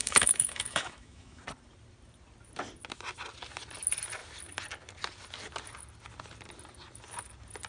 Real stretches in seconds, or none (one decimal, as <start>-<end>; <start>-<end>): 1.4-7.7